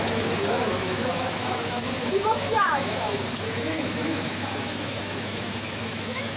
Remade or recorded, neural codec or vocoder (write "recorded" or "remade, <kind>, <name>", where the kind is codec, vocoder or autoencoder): remade, autoencoder, DAC-VAE